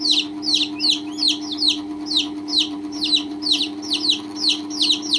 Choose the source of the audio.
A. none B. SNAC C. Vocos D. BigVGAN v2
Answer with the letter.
D